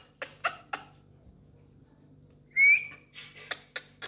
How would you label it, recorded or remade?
recorded